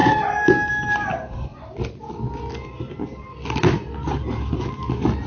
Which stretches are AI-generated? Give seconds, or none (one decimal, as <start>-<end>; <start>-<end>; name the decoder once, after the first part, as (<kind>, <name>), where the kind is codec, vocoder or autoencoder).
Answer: none